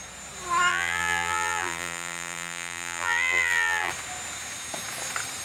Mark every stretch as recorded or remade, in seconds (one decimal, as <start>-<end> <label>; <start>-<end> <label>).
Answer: 0.0-0.7 recorded; 0.7-3.9 remade; 3.9-5.4 recorded